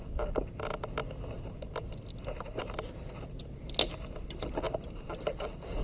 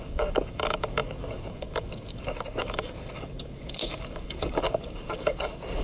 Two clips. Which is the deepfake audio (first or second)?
second